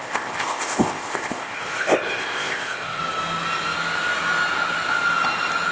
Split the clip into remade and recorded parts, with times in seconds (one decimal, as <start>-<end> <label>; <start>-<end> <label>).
0.0-3.0 remade; 3.0-5.7 recorded